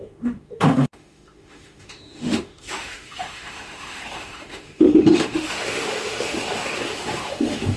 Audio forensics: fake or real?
fake